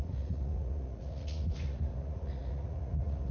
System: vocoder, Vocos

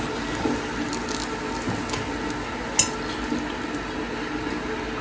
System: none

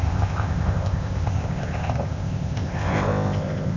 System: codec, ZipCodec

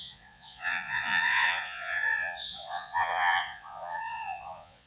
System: vocoder, Vocos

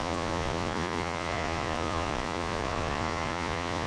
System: vocoder, Vocos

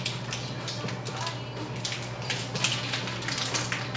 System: none